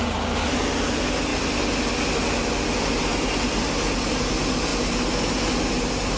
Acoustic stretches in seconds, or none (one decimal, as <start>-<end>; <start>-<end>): 0.0-3.1; 4.3-6.2